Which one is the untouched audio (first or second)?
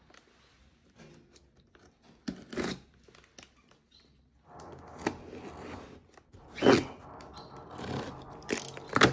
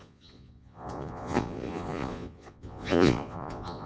first